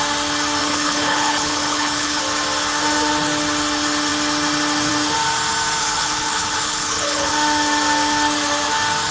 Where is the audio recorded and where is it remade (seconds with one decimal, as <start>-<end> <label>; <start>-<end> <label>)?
0.0-0.6 recorded; 0.6-2.2 remade; 2.2-5.8 recorded; 5.8-7.3 remade; 7.3-9.1 recorded